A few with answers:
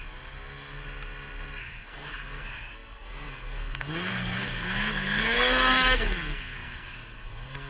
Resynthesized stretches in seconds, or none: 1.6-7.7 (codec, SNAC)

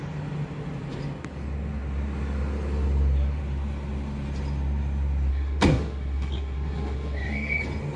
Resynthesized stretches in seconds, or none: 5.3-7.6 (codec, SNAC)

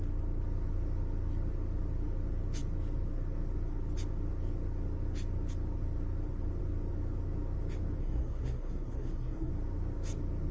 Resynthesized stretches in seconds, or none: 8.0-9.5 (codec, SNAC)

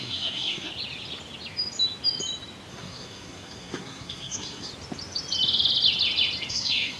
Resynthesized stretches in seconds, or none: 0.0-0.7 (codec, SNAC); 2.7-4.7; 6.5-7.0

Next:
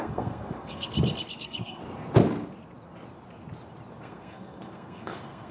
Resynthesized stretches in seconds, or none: 0.0-0.9 (codec, SNAC); 1.4-1.8; 4.0-5.5

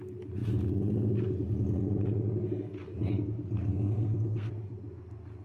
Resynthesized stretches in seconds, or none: 3.7-4.5 (codec, SNAC)

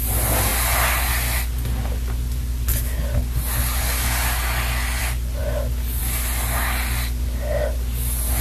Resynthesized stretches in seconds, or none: none

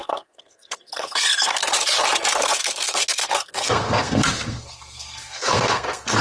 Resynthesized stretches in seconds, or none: 0.0-1.7 (codec, SNAC); 2.4-6.2